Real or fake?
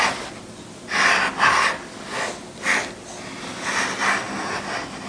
real